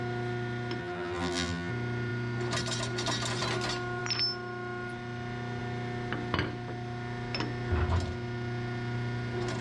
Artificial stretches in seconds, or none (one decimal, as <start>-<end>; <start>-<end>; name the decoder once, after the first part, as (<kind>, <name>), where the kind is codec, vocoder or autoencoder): 0.8-1.7 (vocoder, BigVGAN v2)